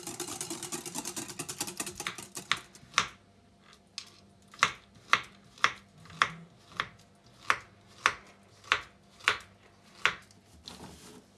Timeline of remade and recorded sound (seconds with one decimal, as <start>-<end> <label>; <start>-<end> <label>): 0.0-11.4 recorded